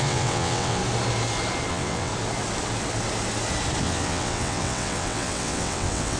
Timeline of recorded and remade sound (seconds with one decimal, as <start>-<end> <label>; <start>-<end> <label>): 0.0-0.8 remade; 0.8-1.7 recorded; 1.7-2.1 remade; 2.1-3.8 recorded; 3.8-6.2 remade